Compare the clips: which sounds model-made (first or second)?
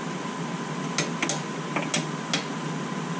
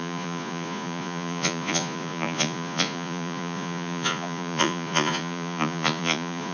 second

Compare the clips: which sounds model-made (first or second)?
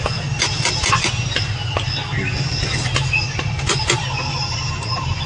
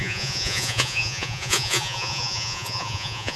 second